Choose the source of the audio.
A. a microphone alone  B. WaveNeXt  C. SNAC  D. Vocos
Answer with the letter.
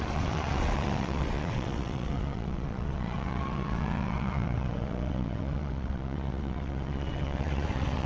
B